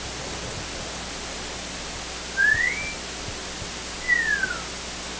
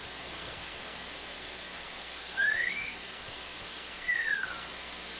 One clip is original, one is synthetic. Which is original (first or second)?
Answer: first